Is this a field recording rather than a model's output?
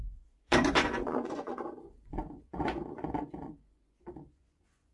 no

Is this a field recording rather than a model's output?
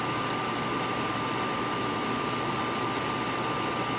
yes